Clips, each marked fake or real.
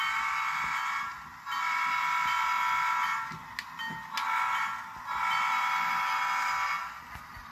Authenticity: real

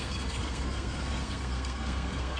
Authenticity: fake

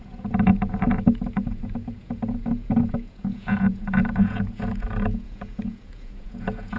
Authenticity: fake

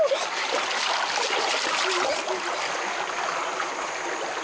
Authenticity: real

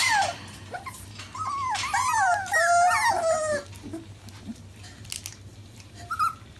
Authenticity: real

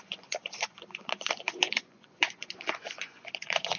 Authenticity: fake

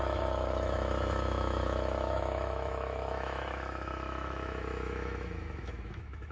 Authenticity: fake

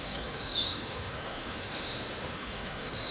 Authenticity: fake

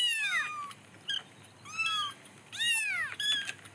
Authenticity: real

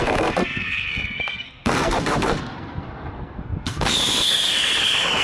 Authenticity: fake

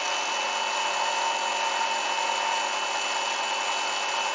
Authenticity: real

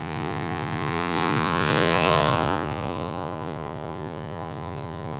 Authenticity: fake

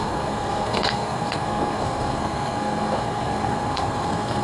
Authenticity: fake